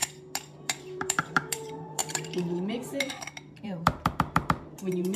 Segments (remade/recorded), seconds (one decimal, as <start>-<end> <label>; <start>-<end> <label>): 0.0-0.6 recorded; 0.6-5.2 remade